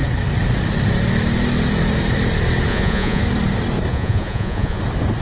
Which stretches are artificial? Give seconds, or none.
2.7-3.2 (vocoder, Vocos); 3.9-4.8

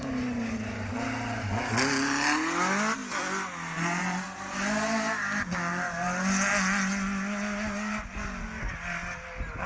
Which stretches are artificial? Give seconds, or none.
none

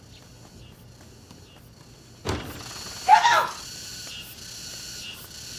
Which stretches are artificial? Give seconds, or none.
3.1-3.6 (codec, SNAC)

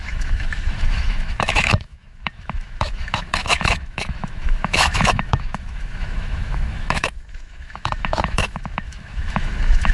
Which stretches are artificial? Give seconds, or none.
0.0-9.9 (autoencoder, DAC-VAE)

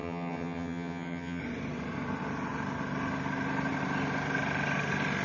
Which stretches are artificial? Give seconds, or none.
0.0-1.4 (vocoder, HiFi-GAN)